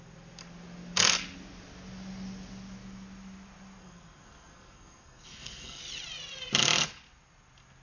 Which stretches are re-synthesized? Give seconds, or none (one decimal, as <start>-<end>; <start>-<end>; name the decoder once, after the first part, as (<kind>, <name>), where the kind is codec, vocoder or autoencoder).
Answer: 3.8-5.8 (codec, SNAC)

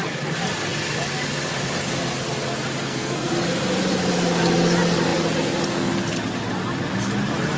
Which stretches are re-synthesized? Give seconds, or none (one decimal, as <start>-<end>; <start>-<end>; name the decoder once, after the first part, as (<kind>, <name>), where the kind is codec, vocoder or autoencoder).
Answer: 2.8-3.3 (codec, SNAC)

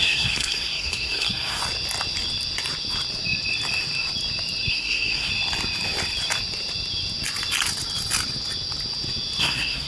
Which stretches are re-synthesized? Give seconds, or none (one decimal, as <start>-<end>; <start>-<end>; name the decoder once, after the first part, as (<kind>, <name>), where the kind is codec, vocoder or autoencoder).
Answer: 0.0-1.6 (codec, SNAC); 4.7-5.3; 9.4-9.9

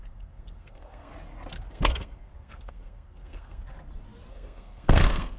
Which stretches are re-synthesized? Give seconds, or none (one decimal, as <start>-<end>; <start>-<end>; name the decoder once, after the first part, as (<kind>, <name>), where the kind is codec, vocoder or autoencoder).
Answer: 0.0-1.1 (codec, SNAC); 1.7-3.6; 4.3-5.4

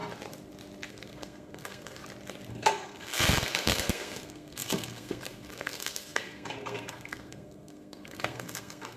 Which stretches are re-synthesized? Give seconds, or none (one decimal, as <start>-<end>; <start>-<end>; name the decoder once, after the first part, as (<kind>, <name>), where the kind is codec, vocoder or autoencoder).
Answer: 0.9-2.0 (codec, SNAC); 2.5-9.0

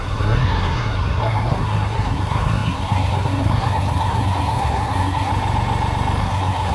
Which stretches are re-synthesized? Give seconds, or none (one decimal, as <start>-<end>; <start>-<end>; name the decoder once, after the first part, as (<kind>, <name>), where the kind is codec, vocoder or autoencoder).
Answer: 0.0-5.3 (codec, SNAC); 6.2-6.7